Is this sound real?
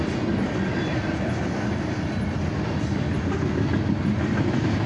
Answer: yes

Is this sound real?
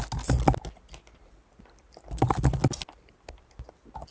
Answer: yes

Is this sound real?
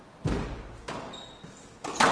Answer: yes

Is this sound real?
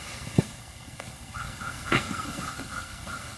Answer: no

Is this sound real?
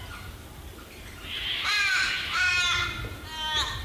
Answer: yes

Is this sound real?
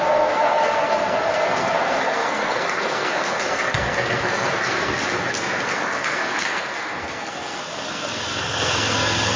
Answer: no